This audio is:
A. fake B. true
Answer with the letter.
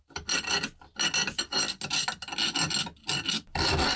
B